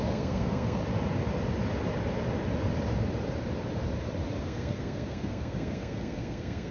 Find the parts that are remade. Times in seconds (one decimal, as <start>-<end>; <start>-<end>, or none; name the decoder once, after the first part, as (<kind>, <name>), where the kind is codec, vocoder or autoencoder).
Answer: 0.0-0.8 (codec, SNAC); 4.4-6.7